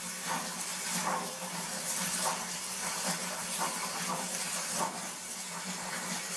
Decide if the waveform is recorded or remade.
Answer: remade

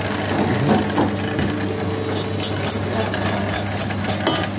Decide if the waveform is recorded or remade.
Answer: recorded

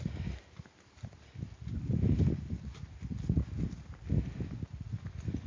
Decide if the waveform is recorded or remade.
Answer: recorded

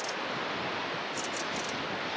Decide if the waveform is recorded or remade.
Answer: recorded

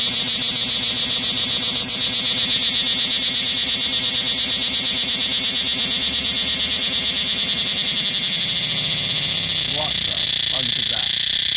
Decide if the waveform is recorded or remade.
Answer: recorded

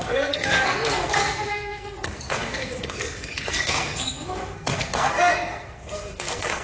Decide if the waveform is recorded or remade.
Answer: remade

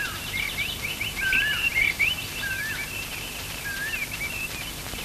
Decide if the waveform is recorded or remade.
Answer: remade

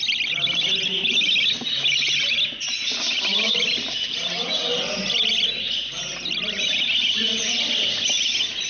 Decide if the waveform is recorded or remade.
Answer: recorded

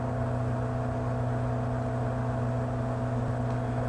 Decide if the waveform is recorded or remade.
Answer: recorded